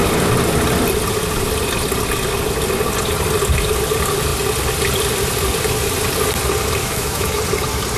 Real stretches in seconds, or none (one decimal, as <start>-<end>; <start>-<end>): 0.0-6.8; 7.4-8.0